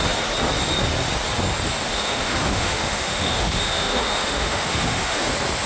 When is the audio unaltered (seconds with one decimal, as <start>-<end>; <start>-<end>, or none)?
0.0-1.9; 5.3-5.7